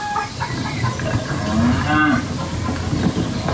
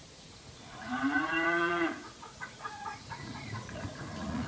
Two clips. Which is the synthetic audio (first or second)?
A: second